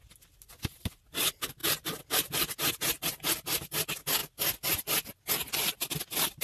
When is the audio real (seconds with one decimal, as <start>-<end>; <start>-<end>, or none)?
0.0-6.4